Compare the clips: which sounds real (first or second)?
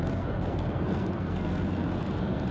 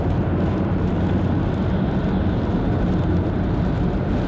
second